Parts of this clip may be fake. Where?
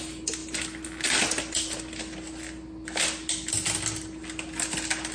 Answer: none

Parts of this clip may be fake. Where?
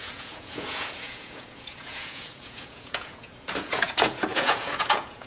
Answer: 0.0-5.3 (vocoder, Vocos)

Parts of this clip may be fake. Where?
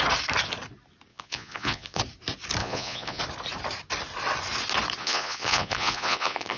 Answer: 1.1-2.0 (vocoder, Vocos); 2.6-3.2; 5.0-6.6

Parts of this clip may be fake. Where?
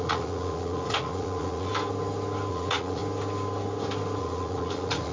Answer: 0.0-1.7 (vocoder, Vocos); 2.5-3.0; 4.2-5.1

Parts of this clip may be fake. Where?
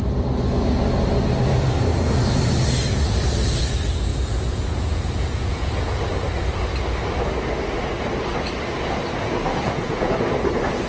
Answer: 4.1-6.0 (vocoder, Vocos); 9.5-10.1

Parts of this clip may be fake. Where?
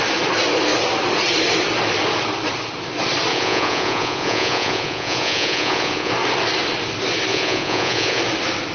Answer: 3.3-6.1 (vocoder, Vocos); 7.3-8.2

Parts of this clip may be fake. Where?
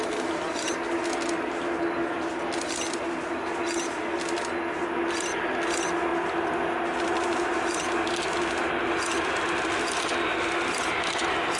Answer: none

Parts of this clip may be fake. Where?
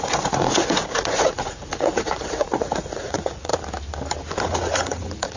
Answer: 0.0-3.5 (vocoder, Vocos); 4.4-5.4